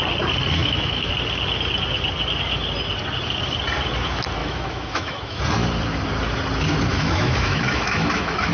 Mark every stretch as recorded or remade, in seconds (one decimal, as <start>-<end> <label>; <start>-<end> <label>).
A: 0.0-0.6 recorded; 0.6-1.1 remade; 1.1-4.4 recorded; 4.4-5.4 remade; 5.4-6.9 recorded; 6.9-8.5 remade